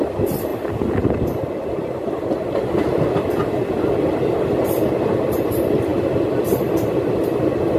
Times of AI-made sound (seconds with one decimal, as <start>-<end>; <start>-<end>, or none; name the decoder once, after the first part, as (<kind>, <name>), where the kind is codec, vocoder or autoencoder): 0.0-7.8 (vocoder, BigVGAN v2)